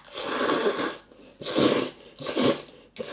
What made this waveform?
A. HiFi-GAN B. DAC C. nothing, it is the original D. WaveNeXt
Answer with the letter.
C